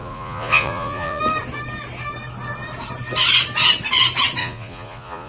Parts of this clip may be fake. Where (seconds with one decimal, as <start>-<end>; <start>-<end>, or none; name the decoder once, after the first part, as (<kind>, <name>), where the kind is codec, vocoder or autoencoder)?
0.0-1.2 (vocoder, Vocos); 4.4-5.3

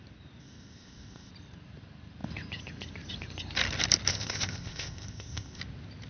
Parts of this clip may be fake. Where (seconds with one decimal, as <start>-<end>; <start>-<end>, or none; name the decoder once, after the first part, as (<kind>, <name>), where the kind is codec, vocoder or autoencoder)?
0.4-1.3 (codec, ZipCodec); 4.1-5.6

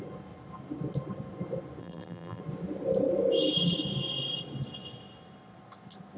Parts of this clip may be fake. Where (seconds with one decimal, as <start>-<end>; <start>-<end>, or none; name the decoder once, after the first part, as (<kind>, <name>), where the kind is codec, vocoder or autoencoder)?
1.8-2.4 (vocoder, BigVGAN v2)

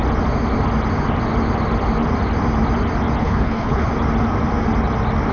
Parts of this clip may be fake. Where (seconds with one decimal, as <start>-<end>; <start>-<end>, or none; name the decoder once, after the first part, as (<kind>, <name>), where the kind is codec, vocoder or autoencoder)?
3.2-3.9 (codec, HILCodec)

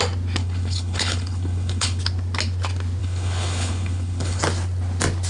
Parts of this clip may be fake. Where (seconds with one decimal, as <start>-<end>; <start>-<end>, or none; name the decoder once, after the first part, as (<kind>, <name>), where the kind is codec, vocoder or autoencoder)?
0.4-2.0 (codec, HILCodec); 3.0-4.4